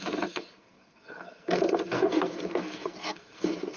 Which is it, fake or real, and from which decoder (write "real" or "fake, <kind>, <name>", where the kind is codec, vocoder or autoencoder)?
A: fake, codec, SNAC